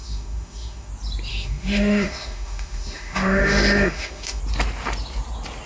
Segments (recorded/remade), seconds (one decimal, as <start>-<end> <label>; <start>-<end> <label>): 0.0-0.9 remade; 0.9-1.3 recorded; 1.3-4.4 remade; 4.4-5.7 recorded